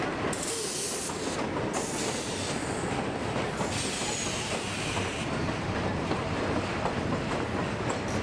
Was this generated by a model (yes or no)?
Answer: no